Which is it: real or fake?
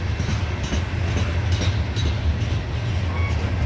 real